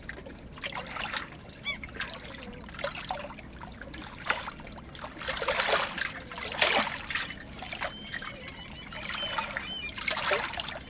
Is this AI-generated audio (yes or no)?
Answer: no